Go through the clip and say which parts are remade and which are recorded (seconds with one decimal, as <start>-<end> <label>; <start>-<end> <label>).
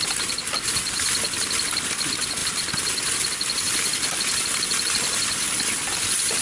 0.0-6.4 recorded